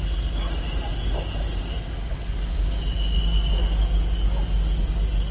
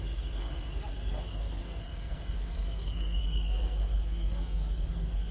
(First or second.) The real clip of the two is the first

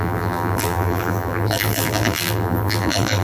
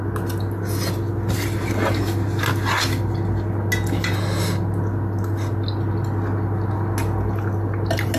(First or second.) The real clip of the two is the second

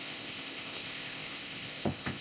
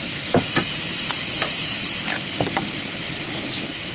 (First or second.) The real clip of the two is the second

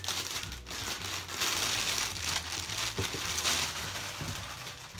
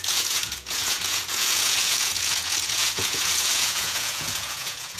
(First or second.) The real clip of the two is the first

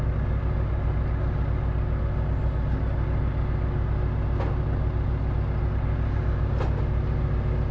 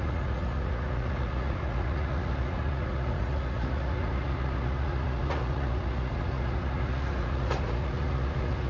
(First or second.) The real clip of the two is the first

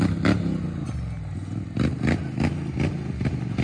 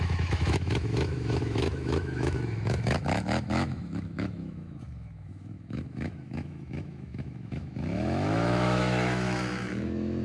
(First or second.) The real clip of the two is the first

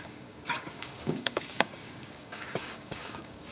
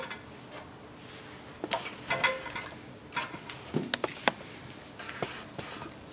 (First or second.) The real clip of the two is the second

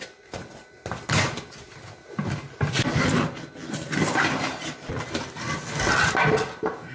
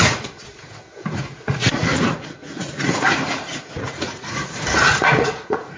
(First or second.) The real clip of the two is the first